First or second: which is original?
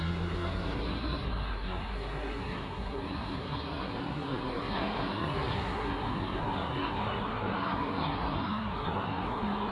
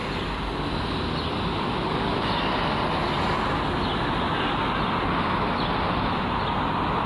second